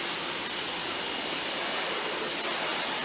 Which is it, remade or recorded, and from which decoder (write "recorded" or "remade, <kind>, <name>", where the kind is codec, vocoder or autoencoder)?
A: recorded